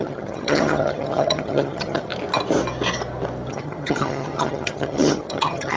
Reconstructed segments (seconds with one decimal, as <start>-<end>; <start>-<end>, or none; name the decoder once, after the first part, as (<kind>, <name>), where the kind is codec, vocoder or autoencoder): 0.0-2.1 (vocoder, HiFi-GAN); 3.5-5.8